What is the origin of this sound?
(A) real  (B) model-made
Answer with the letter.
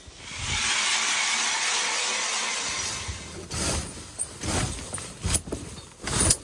A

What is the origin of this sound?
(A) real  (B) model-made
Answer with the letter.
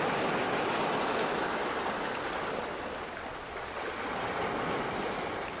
A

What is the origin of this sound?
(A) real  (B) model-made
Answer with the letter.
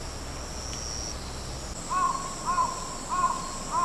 A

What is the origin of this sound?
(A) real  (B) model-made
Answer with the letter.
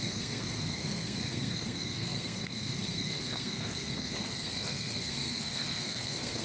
B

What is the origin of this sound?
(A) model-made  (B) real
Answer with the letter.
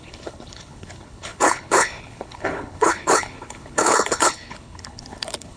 A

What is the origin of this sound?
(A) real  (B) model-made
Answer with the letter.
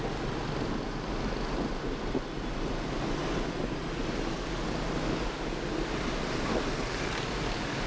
A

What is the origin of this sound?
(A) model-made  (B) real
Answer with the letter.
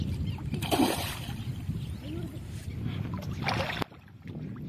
B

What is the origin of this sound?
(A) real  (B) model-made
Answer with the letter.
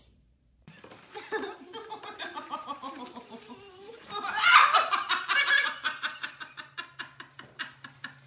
B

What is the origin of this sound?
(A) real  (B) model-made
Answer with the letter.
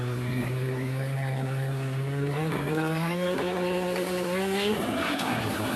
B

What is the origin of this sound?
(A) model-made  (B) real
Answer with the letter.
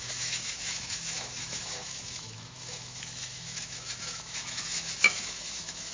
A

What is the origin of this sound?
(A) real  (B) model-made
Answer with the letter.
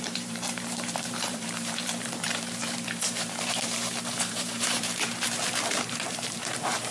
B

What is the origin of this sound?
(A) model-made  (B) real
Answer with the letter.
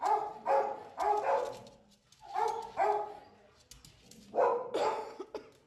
B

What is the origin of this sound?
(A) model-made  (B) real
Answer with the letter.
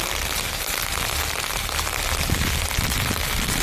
B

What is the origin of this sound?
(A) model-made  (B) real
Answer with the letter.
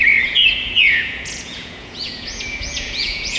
A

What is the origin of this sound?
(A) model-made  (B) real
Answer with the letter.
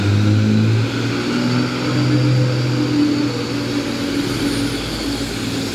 B